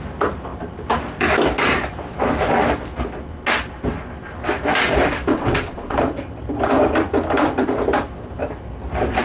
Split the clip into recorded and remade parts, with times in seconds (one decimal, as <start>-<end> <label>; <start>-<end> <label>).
0.0-5.3 recorded; 5.3-6.0 remade; 6.0-9.2 recorded